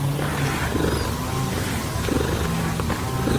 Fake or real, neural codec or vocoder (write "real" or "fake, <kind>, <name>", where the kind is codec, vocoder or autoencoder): real